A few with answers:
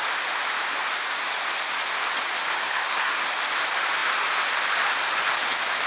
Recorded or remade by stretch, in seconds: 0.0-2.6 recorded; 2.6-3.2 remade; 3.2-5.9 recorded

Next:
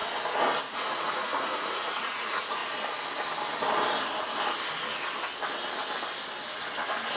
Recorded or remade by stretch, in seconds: 0.0-0.6 recorded; 0.6-2.6 remade; 2.6-7.2 recorded